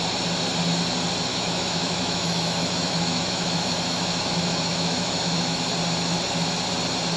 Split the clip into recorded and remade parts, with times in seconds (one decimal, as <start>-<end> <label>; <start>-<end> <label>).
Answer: 0.0-1.3 recorded; 1.3-5.6 remade; 5.6-7.2 recorded